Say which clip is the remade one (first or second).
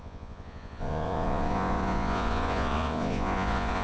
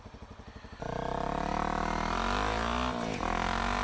first